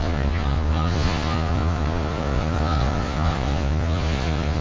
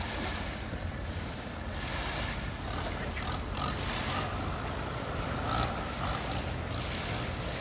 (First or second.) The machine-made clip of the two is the first